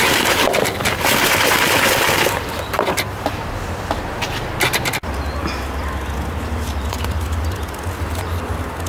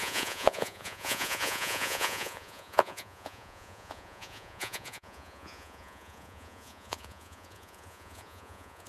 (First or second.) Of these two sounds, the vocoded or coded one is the second